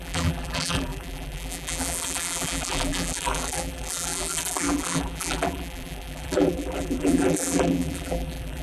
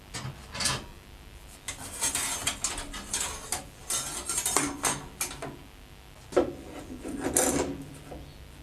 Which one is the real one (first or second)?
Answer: second